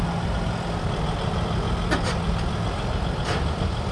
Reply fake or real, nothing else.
real